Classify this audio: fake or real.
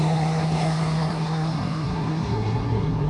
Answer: fake